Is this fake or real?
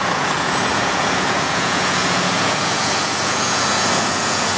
fake